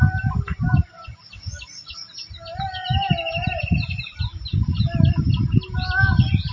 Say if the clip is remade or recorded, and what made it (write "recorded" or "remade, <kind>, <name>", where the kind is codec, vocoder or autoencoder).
recorded